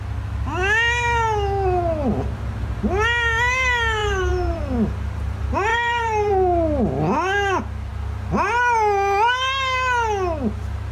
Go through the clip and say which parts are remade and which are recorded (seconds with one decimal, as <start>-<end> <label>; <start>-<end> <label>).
0.0-4.0 recorded; 4.0-4.6 remade; 4.6-5.7 recorded; 5.7-6.3 remade; 6.3-10.9 recorded